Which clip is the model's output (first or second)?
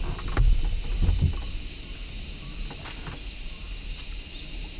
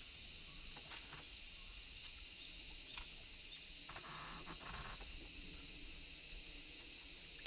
second